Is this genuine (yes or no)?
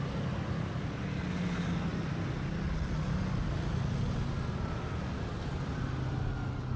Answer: yes